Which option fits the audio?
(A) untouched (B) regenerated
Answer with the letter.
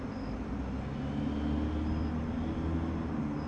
A